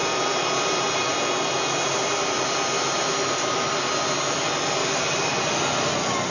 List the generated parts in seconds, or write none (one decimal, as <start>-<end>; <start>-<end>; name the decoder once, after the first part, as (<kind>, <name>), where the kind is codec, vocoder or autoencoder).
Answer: 4.8-5.5 (vocoder, BigVGAN v2)